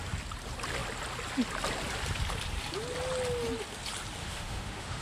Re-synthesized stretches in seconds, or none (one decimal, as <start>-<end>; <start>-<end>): 4.2-5.0